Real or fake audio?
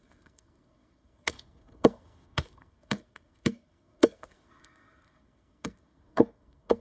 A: fake